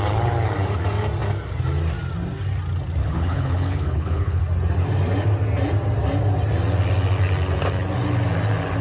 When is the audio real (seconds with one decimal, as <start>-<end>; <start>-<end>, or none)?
0.0-3.0; 4.4-8.8

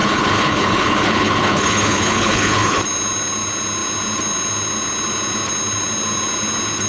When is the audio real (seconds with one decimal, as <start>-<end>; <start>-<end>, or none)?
2.8-6.9

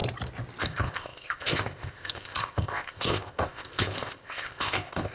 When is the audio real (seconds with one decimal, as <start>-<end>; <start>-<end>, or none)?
0.0-0.6

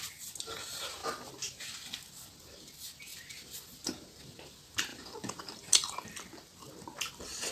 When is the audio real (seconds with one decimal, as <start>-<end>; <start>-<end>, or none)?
0.0-1.0; 1.6-4.9; 6.7-7.5

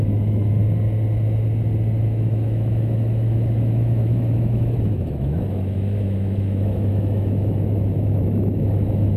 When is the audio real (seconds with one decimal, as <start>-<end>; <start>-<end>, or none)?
0.6-2.0

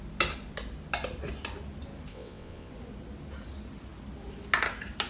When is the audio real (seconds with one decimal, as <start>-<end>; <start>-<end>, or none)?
0.0-2.1; 2.7-5.1

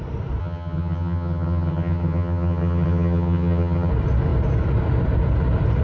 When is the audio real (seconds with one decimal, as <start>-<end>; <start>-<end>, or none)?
0.0-0.4; 3.9-5.8

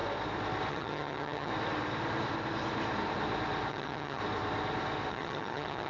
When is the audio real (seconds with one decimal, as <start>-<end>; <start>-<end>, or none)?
0.0-0.7; 1.5-3.7; 4.2-5.1